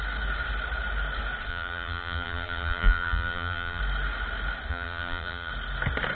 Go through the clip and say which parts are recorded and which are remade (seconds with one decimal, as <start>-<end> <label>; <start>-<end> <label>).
0.0-1.5 recorded; 1.5-3.8 remade; 3.8-4.7 recorded; 4.7-5.5 remade; 5.5-6.1 recorded